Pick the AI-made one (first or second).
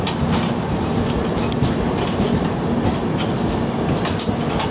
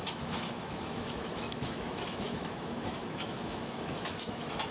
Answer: second